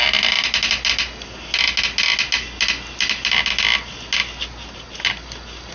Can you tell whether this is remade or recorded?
recorded